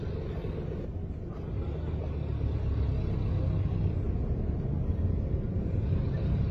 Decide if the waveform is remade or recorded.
recorded